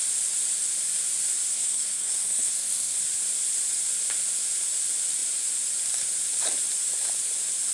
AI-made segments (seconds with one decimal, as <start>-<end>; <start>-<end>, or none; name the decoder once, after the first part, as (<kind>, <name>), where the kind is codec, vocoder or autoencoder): 1.5-3.0 (codec, SNAC)